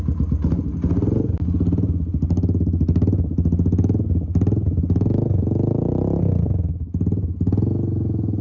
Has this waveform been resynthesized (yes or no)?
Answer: no